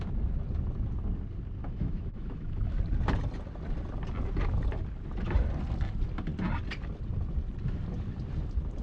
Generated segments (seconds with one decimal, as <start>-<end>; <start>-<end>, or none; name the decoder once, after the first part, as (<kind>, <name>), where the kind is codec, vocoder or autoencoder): 1.6-2.8 (autoencoder, DAC-VAE)

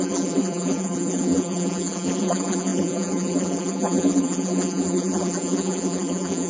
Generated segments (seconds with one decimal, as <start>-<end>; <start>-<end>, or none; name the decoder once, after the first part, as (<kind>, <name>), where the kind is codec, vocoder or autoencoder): 0.0-6.5 (vocoder, BigVGAN v2)

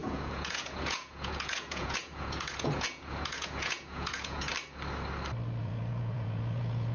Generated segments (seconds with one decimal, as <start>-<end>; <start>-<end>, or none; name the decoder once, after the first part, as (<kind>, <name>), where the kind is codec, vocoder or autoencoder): 0.0-4.5 (vocoder, Vocos); 5.6-6.9

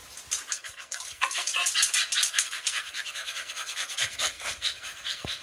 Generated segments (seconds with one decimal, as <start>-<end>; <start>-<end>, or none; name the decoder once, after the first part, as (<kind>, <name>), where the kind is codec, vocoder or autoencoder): 0.5-1.5 (codec, SNAC); 2.3-5.4

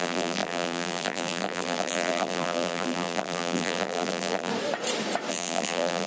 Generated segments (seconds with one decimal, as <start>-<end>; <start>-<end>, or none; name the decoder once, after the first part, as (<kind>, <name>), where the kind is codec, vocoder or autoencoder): 0.0-4.5 (vocoder, BigVGAN v2); 5.3-6.1

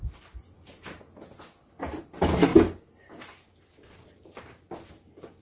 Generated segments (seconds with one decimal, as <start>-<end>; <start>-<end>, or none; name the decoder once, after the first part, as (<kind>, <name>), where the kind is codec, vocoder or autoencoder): none